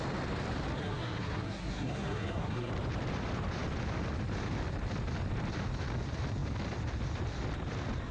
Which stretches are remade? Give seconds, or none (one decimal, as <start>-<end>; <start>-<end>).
0.8-2.7